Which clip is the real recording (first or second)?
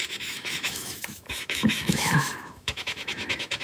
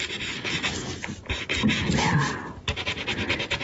second